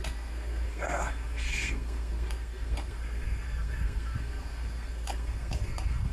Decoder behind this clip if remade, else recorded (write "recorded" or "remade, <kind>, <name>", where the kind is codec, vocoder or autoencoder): remade, codec, SNAC